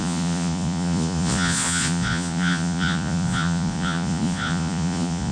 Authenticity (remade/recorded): remade